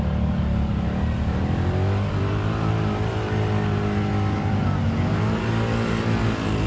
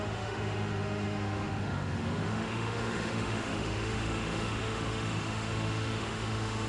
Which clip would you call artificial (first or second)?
second